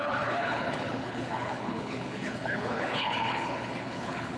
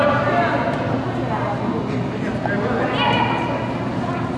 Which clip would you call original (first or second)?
second